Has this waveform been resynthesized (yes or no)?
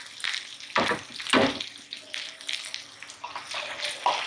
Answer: no